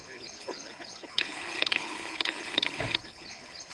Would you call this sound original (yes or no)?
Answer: no